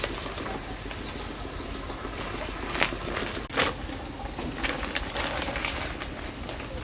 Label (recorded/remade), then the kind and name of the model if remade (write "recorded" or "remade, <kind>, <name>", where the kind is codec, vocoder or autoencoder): recorded